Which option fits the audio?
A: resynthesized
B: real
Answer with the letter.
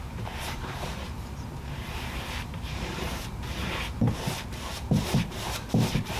A